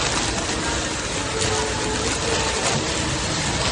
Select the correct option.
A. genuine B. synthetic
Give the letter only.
A